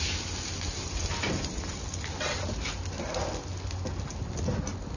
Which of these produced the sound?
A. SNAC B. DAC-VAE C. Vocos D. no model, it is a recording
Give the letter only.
D